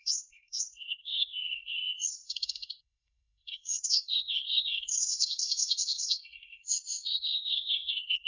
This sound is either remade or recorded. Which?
remade